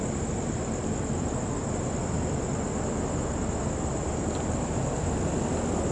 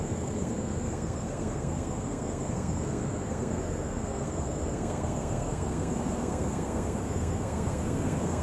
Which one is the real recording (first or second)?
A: first